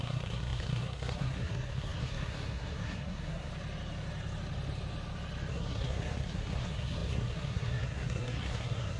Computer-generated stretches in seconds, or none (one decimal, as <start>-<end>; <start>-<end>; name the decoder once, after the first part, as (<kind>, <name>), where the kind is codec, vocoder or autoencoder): 0.0-3.5 (codec, SNAC); 5.5-9.0